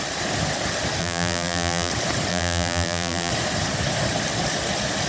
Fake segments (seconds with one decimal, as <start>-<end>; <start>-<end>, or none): 1.0-1.9; 2.3-3.3